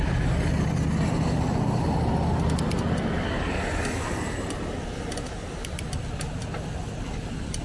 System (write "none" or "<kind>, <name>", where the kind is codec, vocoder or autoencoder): none